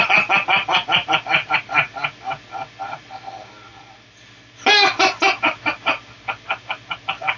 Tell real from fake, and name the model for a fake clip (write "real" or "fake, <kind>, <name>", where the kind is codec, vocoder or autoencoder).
real